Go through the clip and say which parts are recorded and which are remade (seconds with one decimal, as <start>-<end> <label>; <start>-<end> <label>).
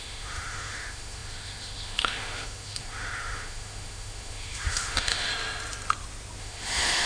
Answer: 0.0-5.3 remade; 5.3-6.4 recorded; 6.4-7.1 remade